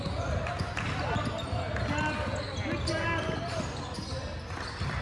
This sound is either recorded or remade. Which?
recorded